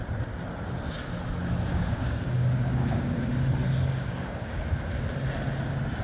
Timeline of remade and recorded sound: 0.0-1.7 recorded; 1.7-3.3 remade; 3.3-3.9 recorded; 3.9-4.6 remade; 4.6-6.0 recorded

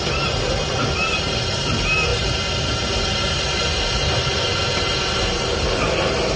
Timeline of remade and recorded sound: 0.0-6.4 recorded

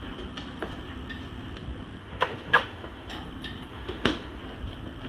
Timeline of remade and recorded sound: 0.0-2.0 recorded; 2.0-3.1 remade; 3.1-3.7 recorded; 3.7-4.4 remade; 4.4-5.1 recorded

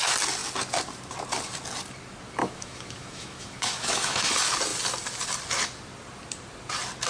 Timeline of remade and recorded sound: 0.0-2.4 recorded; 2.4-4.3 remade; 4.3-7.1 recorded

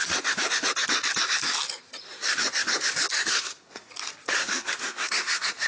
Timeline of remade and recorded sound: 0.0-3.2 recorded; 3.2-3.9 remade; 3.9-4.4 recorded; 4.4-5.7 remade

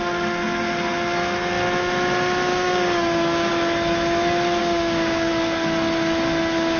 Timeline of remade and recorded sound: 0.0-2.5 recorded; 2.5-3.5 remade; 3.5-4.6 recorded; 4.6-5.3 remade; 5.3-6.8 recorded